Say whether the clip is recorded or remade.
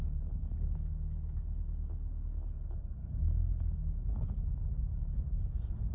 recorded